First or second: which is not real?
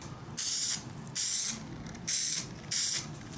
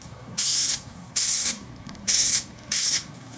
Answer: second